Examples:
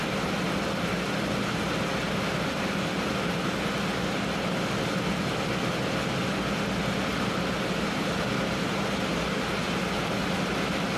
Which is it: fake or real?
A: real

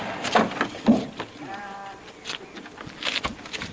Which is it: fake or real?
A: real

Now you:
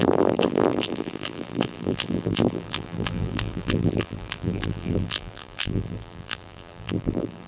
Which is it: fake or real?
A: fake